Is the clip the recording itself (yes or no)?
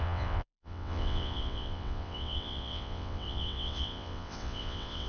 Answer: no